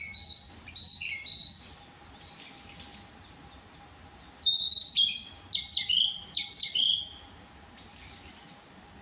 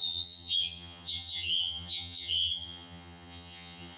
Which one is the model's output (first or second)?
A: second